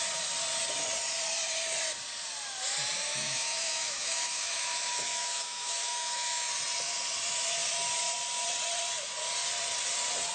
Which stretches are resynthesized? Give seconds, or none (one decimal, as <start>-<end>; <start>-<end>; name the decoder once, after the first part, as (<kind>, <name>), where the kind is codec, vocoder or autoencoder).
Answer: 3.1-6.5 (autoencoder, DAC-VAE)